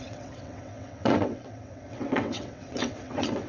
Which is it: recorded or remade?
remade